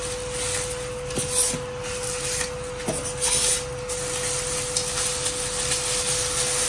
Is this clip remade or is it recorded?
recorded